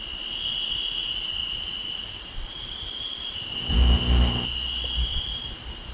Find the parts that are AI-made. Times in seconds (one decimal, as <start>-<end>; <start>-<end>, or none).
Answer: 1.4-4.0; 5.1-5.9